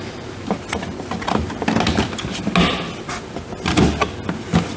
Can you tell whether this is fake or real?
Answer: real